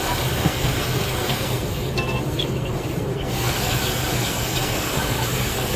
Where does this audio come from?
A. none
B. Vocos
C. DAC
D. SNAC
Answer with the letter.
D